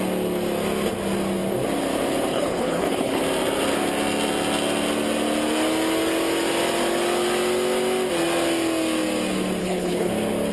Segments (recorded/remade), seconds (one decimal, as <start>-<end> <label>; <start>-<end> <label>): 0.0-2.3 recorded; 2.3-3.2 remade; 3.2-9.6 recorded; 9.6-10.1 remade; 10.1-10.5 recorded

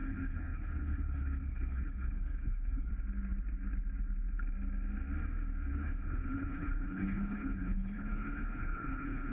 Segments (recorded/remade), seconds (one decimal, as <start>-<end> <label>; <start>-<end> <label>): 0.0-2.9 remade; 2.9-5.7 recorded; 5.7-9.3 remade

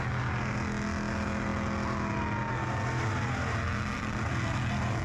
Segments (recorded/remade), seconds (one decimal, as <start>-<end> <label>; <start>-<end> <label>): 0.0-5.0 recorded

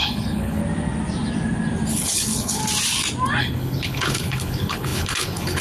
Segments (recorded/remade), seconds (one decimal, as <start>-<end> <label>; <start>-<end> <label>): 0.0-0.6 remade; 0.6-1.9 recorded; 1.9-2.6 remade; 2.6-3.4 recorded; 3.4-5.6 remade